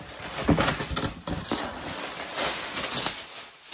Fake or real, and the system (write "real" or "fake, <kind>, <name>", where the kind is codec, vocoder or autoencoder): real